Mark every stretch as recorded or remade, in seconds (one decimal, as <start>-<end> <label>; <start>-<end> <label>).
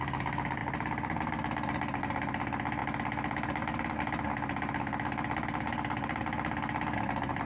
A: 0.0-7.4 recorded